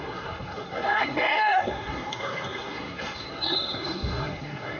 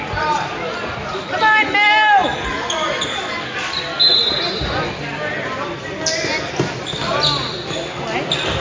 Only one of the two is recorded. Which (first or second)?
second